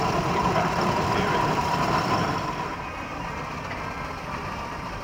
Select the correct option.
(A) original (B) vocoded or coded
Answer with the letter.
B